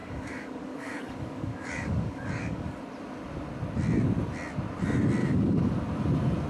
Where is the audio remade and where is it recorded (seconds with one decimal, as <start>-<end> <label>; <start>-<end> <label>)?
0.0-2.8 remade; 2.8-5.2 recorded; 5.2-5.7 remade; 5.7-6.5 recorded